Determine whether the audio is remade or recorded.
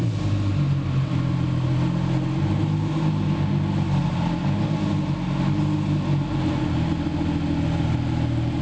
recorded